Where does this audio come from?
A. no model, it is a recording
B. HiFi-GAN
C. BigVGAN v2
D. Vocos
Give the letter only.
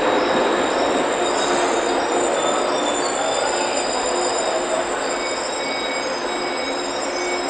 A